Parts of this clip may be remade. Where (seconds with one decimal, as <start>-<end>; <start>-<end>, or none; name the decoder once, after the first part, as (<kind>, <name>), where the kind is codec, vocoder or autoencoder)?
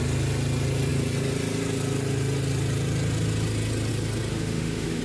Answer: 4.3-5.0 (autoencoder, DAC-VAE)